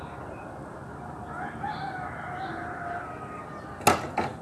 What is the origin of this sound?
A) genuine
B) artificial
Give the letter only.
A